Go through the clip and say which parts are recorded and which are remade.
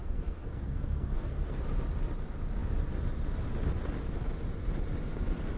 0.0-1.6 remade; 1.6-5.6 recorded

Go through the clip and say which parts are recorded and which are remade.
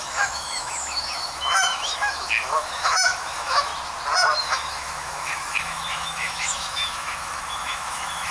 0.0-3.7 remade; 3.7-4.4 recorded; 4.4-8.3 remade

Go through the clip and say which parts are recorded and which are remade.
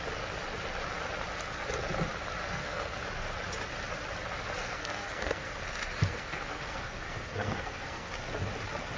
0.0-2.4 recorded; 2.4-2.9 remade; 2.9-4.6 recorded; 4.6-8.1 remade; 8.1-9.0 recorded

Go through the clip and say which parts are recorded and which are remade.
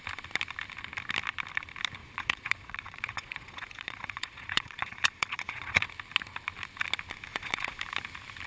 0.0-2.0 recorded; 2.0-5.9 remade; 5.9-7.3 recorded; 7.3-7.8 remade; 7.8-8.5 recorded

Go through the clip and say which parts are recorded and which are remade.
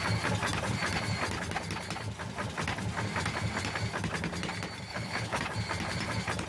0.0-4.9 recorded; 4.9-5.4 remade; 5.4-6.5 recorded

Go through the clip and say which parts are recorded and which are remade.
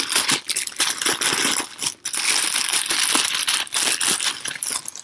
0.0-5.0 recorded